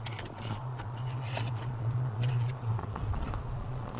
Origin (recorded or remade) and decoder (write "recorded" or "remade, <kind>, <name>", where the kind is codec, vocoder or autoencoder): remade, vocoder, Vocos